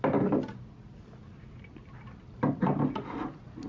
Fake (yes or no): no